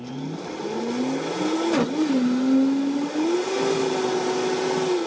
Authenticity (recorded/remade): recorded